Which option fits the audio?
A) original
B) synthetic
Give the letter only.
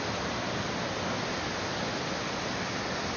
A